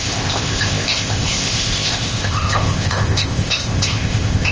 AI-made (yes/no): yes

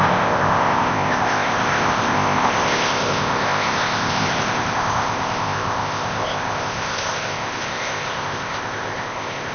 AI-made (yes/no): yes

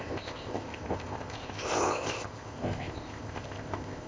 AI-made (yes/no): yes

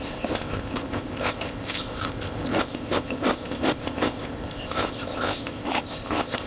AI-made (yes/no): yes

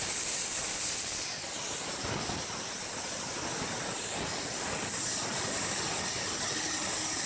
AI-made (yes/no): no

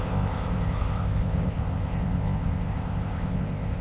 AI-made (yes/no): yes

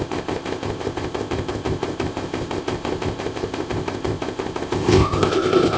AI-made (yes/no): yes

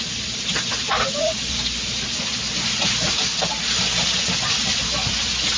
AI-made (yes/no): no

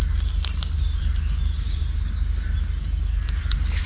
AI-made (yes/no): no